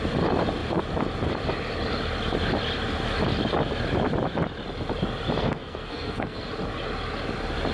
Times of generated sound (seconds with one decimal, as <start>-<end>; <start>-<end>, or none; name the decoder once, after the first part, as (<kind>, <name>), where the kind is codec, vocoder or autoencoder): 5.4-6.5 (codec, SNAC)

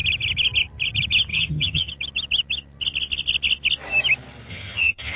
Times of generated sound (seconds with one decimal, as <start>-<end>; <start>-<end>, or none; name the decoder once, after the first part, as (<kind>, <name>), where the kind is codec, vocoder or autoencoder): 1.3-1.9 (vocoder, HiFi-GAN); 4.5-5.2

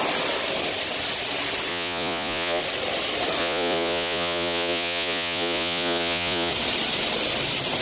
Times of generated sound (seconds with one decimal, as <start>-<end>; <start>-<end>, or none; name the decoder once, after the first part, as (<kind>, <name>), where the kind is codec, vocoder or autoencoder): 1.7-2.6 (vocoder, Vocos); 3.4-6.5

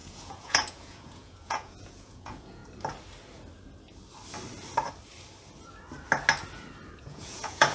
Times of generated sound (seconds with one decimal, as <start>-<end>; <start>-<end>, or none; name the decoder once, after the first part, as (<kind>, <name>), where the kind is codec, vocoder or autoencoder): 0.0-2.6 (vocoder, Vocos); 7.0-7.7

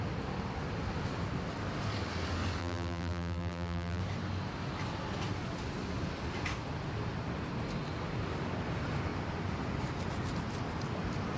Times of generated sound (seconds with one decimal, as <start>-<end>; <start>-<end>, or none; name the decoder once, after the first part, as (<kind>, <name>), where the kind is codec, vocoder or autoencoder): 2.6-4.0 (vocoder, BigVGAN v2)

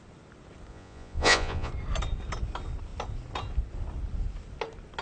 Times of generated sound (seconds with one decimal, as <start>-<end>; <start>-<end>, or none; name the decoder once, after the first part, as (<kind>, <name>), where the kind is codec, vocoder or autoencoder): 0.7-1.7 (vocoder, Vocos)